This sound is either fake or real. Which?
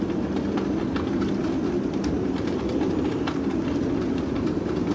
real